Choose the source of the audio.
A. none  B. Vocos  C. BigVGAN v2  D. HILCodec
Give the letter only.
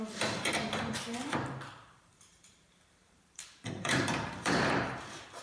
C